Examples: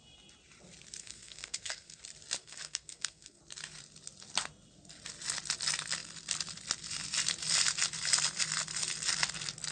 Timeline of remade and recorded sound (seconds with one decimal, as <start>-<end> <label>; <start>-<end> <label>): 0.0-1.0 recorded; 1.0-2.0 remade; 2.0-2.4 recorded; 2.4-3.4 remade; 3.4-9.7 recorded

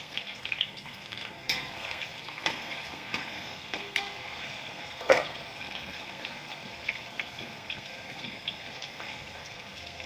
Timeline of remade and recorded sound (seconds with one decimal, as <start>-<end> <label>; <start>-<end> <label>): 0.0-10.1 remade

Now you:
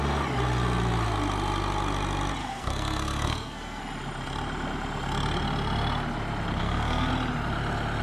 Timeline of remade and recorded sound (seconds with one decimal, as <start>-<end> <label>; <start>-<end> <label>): 0.0-2.4 recorded; 2.4-3.8 remade; 3.8-6.6 recorded; 6.6-7.1 remade; 7.1-8.0 recorded